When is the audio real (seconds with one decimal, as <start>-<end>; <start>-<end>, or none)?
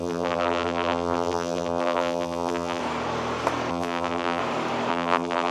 2.8-3.7; 4.4-4.9